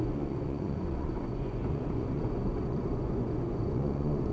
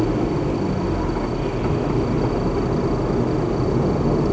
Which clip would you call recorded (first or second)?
second